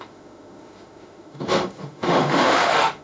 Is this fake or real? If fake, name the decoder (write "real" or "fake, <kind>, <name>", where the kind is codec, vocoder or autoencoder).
fake, autoencoder, DAC-VAE